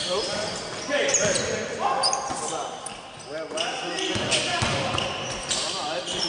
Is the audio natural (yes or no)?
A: yes